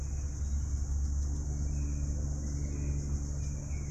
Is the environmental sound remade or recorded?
recorded